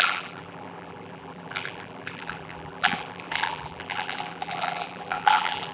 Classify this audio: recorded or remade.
remade